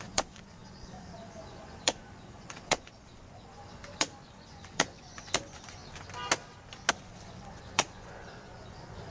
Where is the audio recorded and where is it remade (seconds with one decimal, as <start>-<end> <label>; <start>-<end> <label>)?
0.0-5.8 remade; 5.8-6.9 recorded; 6.9-9.1 remade